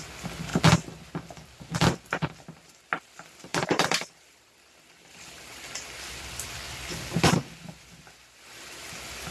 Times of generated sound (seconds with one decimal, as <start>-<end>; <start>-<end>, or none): 3.5-8.0